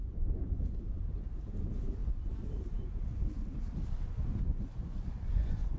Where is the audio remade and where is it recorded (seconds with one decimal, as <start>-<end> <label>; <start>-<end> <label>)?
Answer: 0.0-0.6 remade; 0.6-4.5 recorded; 4.5-5.8 remade